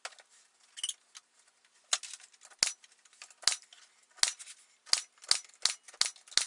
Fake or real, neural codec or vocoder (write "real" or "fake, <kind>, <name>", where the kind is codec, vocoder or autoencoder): real